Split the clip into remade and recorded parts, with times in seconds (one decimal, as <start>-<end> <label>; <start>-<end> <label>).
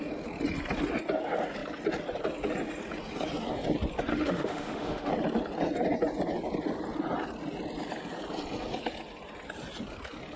0.0-4.1 recorded; 4.1-5.1 remade; 5.1-10.4 recorded